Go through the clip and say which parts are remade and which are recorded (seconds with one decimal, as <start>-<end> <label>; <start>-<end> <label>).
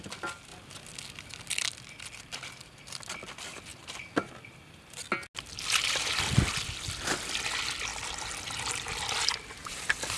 0.0-10.2 recorded